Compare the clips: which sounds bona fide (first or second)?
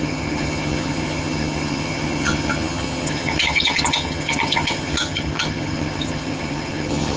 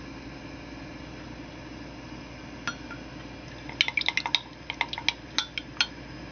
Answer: second